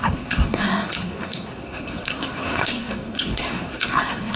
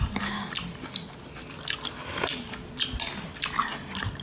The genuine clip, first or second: second